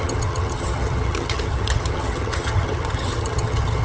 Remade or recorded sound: remade